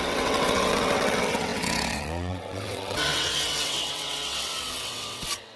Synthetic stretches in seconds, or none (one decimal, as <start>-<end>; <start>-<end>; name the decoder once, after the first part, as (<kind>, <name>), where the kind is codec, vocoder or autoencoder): 0.0-5.6 (vocoder, WaveNeXt)